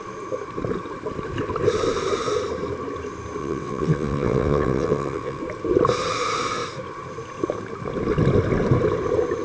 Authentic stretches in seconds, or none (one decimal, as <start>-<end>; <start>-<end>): 0.0-3.4; 5.4-9.4